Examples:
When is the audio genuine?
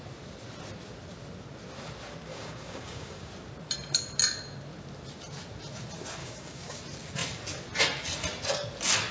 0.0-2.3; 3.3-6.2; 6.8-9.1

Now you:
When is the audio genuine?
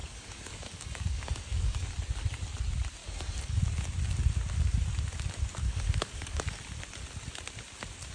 1.9-3.0; 3.6-5.6; 6.4-8.1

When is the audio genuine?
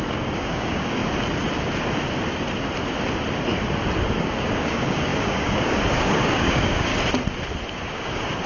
1.0-4.2; 6.9-7.8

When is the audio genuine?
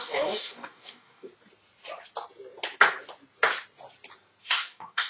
1.3-4.4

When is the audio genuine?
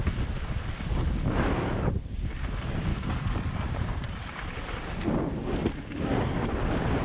0.0-2.9; 3.7-7.0